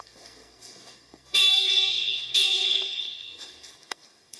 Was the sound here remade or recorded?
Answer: remade